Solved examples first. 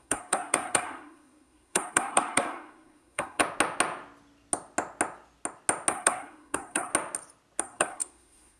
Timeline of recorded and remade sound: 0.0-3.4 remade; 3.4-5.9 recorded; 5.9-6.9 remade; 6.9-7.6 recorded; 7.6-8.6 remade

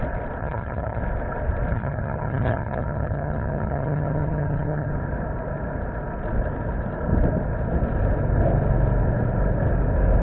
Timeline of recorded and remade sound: 0.0-0.4 recorded; 0.4-1.0 remade; 1.0-1.7 recorded; 1.7-4.9 remade; 4.9-10.2 recorded

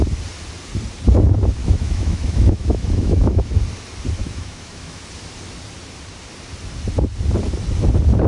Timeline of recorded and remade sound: 0.0-1.6 recorded; 1.6-3.5 remade; 3.5-4.2 recorded; 4.2-5.0 remade; 5.0-8.3 recorded